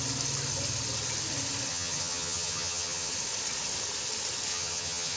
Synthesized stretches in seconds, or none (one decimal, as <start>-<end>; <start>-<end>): 1.7-3.1; 4.5-5.2